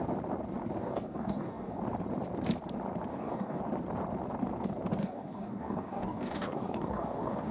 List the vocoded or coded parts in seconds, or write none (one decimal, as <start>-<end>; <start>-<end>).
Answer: 0.8-1.8; 3.1-3.6; 5.0-7.5